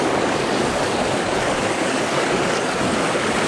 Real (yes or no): no